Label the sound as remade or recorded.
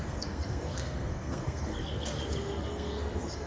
remade